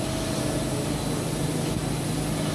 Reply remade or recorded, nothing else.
recorded